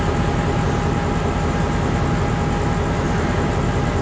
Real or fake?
real